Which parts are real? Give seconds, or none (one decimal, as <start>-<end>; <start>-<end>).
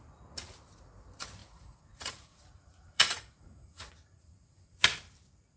0.0-1.4; 4.8-5.6